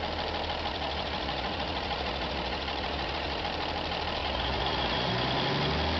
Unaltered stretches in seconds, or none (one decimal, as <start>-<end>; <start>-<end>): 0.0-0.7; 3.4-4.2; 5.1-6.0